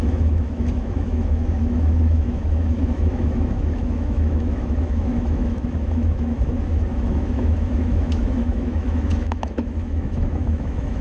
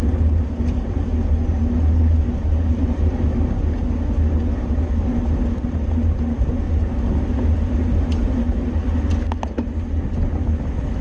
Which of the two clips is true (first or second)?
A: second